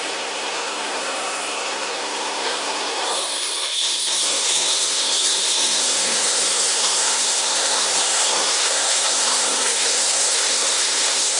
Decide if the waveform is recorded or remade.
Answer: remade